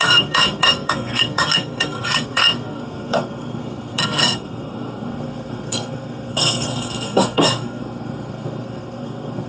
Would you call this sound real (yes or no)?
no